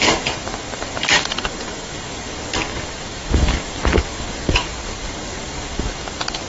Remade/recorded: remade